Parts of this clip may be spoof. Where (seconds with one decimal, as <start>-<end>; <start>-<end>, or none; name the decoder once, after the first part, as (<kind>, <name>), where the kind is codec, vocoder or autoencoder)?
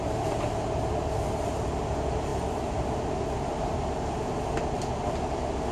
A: none